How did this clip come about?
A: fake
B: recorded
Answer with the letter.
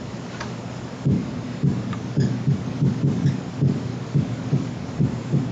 A